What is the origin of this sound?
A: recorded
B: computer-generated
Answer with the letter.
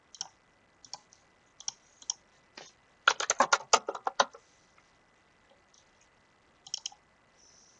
A